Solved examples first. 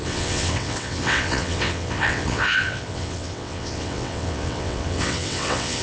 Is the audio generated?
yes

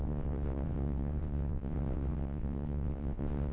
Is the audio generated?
yes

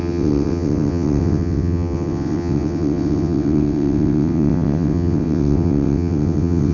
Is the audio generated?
yes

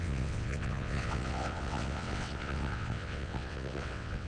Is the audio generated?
yes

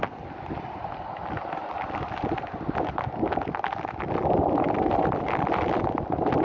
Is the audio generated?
no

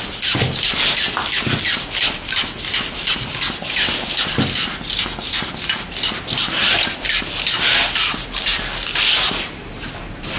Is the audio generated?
no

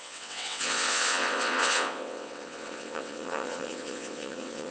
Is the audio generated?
yes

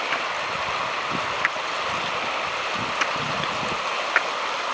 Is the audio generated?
no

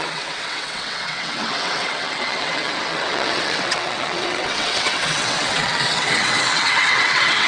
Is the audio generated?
yes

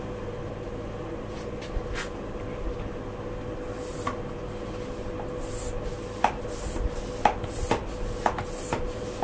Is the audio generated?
no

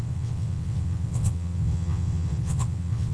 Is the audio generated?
yes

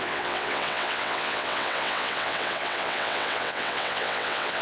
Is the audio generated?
yes